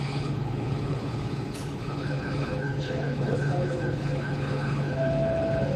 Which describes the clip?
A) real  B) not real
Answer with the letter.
B